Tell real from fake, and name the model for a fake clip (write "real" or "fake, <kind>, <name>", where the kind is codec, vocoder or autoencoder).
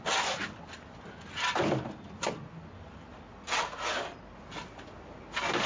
real